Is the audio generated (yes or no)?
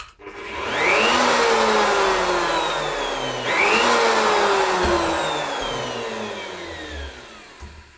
no